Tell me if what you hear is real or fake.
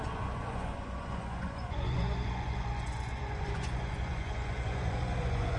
fake